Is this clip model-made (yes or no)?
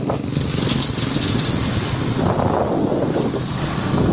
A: no